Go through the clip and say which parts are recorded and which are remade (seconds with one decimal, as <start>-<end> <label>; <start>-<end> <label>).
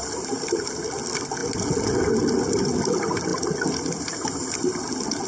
0.0-5.3 recorded